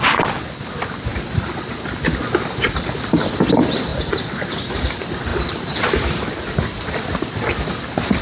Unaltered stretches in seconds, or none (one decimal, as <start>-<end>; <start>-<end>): 0.0-3.9; 4.7-8.2